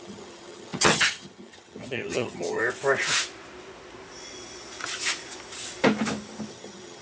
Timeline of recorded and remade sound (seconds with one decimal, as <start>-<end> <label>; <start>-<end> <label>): 0.0-2.6 remade; 2.6-6.5 recorded; 6.5-7.0 remade